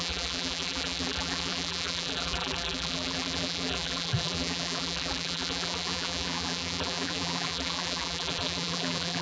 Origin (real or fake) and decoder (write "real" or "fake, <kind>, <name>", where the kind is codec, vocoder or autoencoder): fake, vocoder, BigVGAN v2